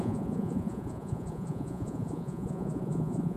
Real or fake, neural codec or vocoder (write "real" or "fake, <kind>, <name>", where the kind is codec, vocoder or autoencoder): fake, vocoder, Vocos